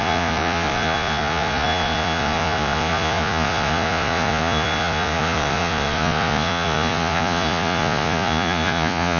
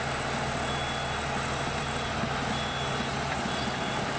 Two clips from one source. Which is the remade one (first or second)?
first